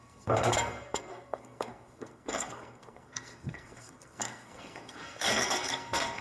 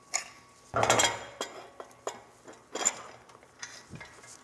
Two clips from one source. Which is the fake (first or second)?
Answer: first